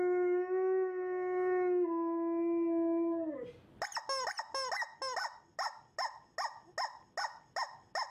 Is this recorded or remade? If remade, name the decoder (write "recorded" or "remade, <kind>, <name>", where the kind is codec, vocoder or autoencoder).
recorded